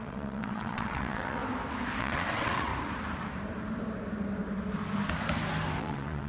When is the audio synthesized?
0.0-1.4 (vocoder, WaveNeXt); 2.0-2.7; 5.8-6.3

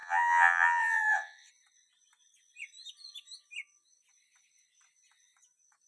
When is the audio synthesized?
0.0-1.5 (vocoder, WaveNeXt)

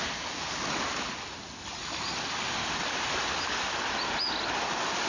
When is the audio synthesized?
none

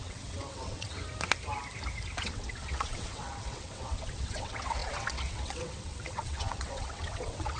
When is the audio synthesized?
0.0-1.0 (vocoder, WaveNeXt); 2.2-7.6

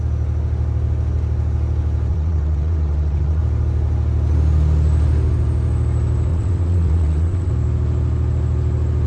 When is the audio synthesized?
2.1-3.4 (vocoder, WaveNeXt); 6.3-7.5

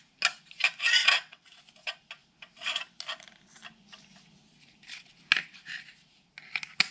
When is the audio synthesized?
1.0-1.6 (vocoder, WaveNeXt)

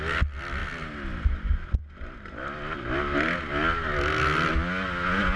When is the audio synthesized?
none